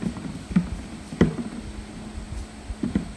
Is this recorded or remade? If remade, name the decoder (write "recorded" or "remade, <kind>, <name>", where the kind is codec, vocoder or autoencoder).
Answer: recorded